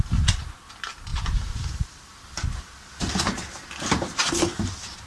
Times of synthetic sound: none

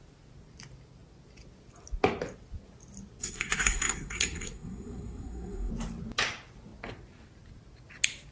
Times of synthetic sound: 3.2-5.7 (codec, SNAC)